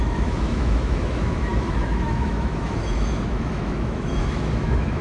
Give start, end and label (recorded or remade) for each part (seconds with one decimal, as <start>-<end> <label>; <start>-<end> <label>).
0.0-5.0 remade